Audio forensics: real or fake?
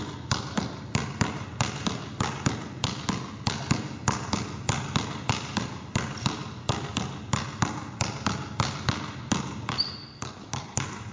real